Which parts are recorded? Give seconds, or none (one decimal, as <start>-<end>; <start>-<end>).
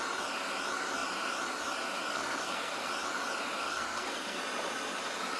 0.0-2.1; 2.9-3.6; 4.4-5.4